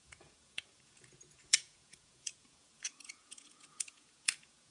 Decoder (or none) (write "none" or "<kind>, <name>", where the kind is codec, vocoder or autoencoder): vocoder, Vocos